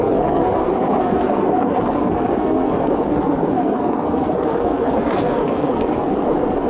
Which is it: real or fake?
fake